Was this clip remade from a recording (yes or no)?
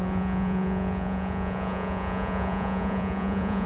yes